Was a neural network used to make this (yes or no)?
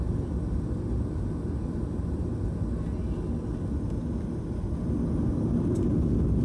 no